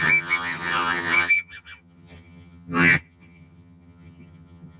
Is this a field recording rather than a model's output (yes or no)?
no